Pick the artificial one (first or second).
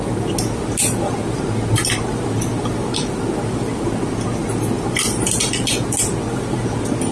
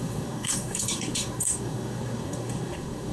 second